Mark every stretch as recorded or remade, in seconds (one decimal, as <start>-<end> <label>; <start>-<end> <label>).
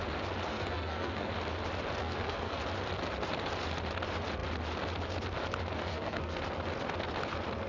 0.0-0.5 recorded; 0.5-1.3 remade; 1.3-2.0 recorded; 2.0-2.6 remade; 2.6-5.8 recorded; 5.8-6.4 remade; 6.4-7.7 recorded